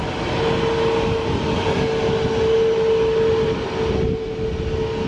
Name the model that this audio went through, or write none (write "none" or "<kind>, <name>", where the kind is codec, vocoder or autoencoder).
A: none